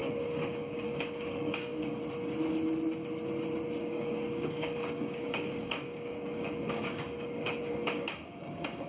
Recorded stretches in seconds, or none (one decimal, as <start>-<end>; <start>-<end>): 2.0-3.8